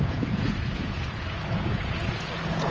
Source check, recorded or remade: remade